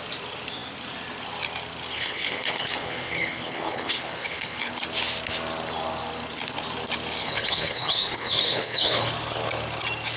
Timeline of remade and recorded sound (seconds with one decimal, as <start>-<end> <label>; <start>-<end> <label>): 0.0-1.9 recorded; 1.9-4.7 remade; 4.7-7.2 recorded; 7.2-9.1 remade; 9.1-10.2 recorded